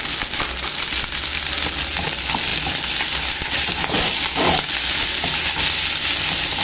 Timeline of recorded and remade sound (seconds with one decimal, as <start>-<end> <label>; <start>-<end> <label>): 0.0-6.6 recorded